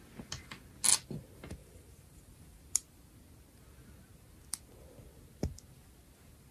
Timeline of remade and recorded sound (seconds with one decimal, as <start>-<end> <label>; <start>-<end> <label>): 0.0-1.6 recorded; 1.6-2.6 remade; 2.6-6.5 recorded